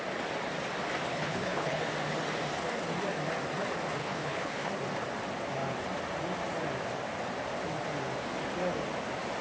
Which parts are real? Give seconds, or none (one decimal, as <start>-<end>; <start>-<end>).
0.0-1.1; 1.8-4.0; 4.7-9.4